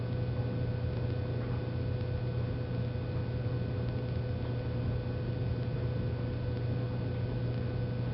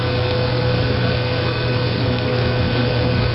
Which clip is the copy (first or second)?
second